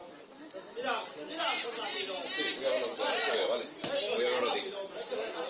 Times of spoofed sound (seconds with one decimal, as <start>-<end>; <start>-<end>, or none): none

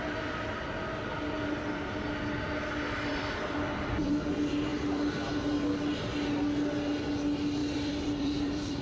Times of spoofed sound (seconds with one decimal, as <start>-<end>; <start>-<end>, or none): 3.1-4.1; 7.6-8.8

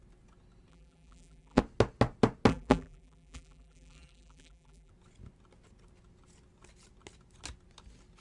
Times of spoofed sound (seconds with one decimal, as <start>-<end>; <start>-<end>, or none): 0.7-1.6; 2.5-4.9